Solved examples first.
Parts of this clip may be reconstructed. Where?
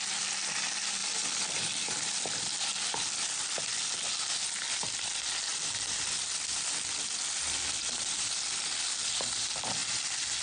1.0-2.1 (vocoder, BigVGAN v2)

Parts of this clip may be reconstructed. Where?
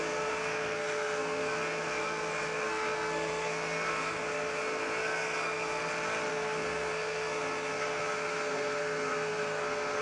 0.0-5.8 (codec, SNAC); 6.3-10.0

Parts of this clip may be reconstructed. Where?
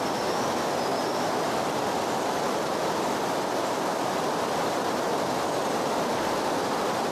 none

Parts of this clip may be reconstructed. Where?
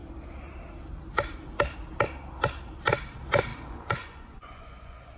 3.5-5.2 (vocoder, Vocos)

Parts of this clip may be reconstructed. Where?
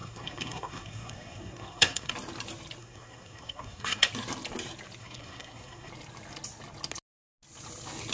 0.0-2.1 (codec, SNAC); 2.8-4.1; 5.0-5.9